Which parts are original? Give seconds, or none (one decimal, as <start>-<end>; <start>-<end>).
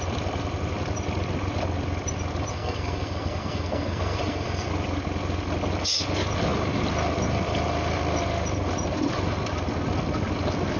0.0-2.5; 4.7-10.8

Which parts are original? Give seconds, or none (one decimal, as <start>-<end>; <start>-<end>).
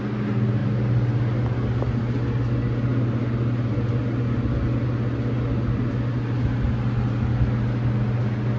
0.0-8.6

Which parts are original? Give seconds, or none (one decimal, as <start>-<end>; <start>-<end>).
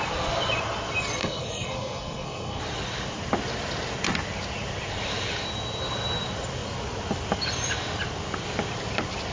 0.0-1.2; 2.6-9.3